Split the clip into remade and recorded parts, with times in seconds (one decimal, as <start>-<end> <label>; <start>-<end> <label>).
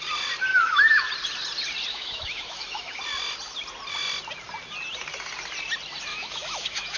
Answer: 0.0-0.5 recorded; 0.5-1.1 remade; 1.1-1.9 recorded; 1.9-3.0 remade; 3.0-6.1 recorded; 6.1-7.0 remade